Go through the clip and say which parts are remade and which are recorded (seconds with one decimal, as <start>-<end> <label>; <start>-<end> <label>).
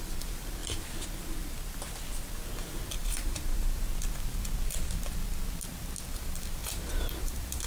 0.0-3.0 recorded; 3.0-3.9 remade; 3.9-6.6 recorded; 6.6-7.7 remade